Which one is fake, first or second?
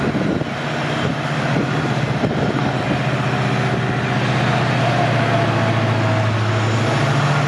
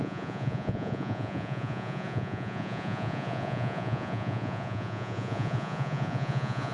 second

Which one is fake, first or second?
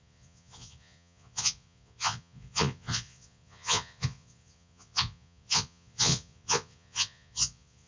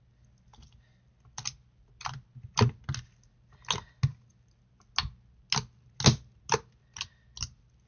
first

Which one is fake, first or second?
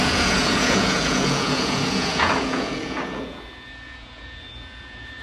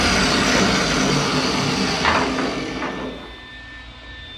first